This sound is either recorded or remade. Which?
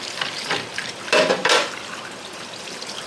remade